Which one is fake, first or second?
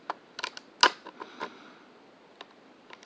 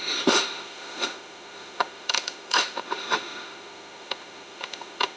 second